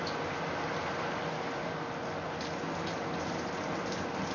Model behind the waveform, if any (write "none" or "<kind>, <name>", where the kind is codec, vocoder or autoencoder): none